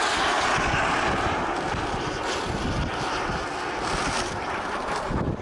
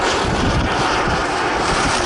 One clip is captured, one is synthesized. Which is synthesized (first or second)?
second